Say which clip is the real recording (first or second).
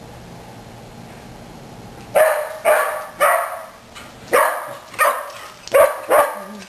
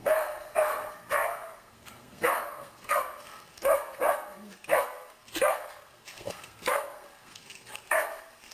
first